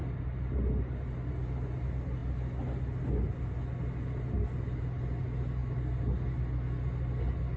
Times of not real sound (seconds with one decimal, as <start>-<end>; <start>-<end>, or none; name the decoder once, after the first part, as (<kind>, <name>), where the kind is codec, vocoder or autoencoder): none